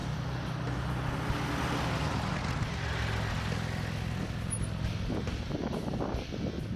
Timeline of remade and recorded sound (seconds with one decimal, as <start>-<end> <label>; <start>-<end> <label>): 0.0-0.9 remade; 0.9-6.8 recorded